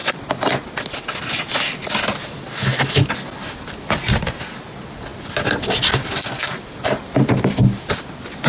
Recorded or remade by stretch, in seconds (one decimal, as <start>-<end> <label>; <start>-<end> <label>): 0.0-8.5 recorded